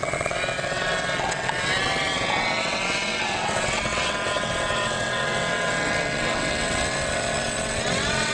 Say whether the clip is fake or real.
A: fake